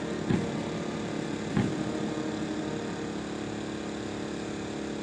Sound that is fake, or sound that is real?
real